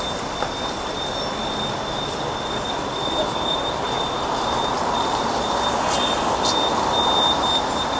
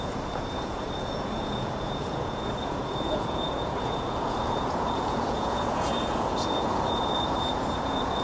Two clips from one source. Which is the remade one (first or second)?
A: second